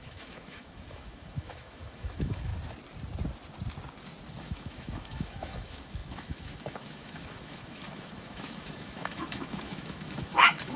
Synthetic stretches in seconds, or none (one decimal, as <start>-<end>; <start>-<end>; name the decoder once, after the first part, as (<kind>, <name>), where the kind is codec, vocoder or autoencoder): 0.0-2.5 (autoencoder, DAC-VAE); 4.4-10.8